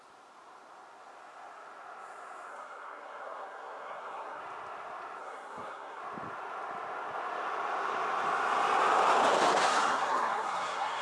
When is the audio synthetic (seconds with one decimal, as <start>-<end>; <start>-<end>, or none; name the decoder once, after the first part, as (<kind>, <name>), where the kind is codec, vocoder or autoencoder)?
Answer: 2.5-4.4 (codec, SNAC); 5.2-6.0; 9.7-11.0